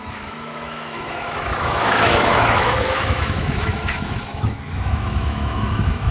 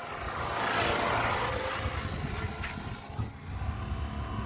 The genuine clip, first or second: second